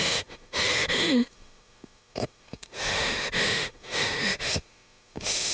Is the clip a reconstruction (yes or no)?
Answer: yes